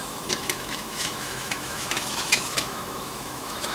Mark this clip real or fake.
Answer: fake